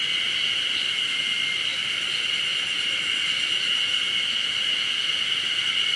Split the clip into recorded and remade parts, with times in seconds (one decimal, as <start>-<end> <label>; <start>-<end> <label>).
0.0-6.0 recorded